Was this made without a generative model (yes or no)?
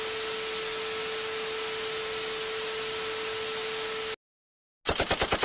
yes